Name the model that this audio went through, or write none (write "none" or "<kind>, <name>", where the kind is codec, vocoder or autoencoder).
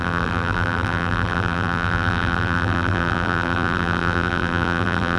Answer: vocoder, BigVGAN v2